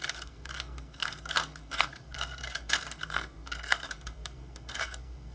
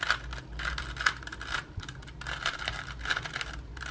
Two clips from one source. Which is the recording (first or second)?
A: second